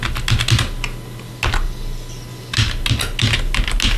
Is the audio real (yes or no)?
yes